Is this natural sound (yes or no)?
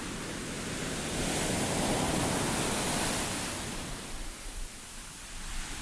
yes